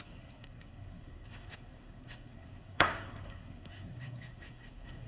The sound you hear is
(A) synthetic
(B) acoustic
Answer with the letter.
A